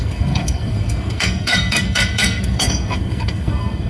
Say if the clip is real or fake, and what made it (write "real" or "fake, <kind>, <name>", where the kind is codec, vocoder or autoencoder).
fake, codec, SNAC